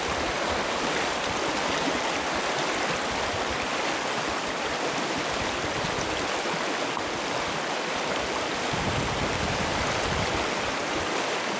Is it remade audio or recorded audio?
recorded